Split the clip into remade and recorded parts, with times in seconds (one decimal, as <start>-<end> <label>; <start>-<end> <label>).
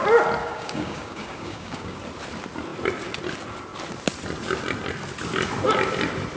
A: 0.0-0.4 recorded; 0.4-2.0 remade; 2.0-6.4 recorded